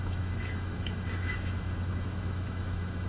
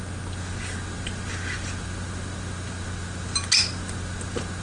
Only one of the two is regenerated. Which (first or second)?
first